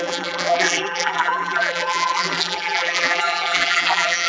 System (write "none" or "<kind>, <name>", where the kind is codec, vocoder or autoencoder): vocoder, BigVGAN v2